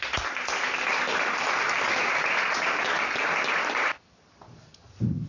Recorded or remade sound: recorded